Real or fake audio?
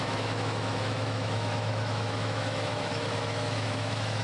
fake